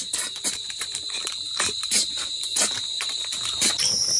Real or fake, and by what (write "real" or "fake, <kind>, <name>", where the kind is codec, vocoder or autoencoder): fake, vocoder, BigVGAN v2